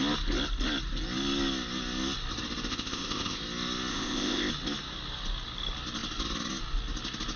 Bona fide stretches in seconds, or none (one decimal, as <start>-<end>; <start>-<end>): 0.0-2.7; 3.4-3.9; 4.5-7.4